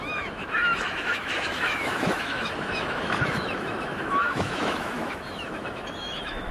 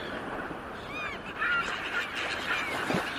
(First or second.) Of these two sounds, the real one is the second